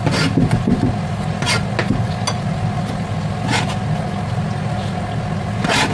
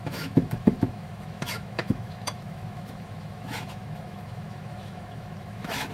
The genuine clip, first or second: first